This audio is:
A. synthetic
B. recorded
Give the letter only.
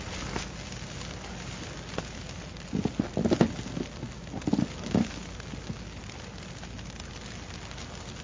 B